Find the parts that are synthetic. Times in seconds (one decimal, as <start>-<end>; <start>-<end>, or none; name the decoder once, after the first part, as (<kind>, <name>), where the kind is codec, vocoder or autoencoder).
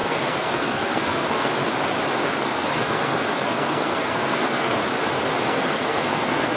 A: 0.0-1.5 (codec, SNAC); 2.3-4.8; 5.4-6.6